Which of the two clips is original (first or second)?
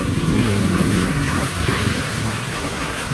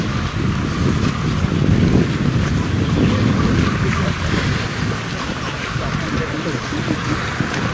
second